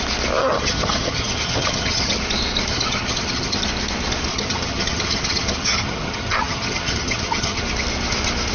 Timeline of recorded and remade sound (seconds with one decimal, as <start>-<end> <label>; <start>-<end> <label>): 0.0-0.4 recorded; 0.4-2.2 remade; 2.2-2.7 recorded; 2.7-3.6 remade; 3.6-4.3 recorded; 4.3-7.6 remade; 7.6-8.5 recorded